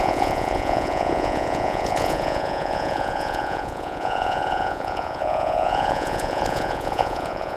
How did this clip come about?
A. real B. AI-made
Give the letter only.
B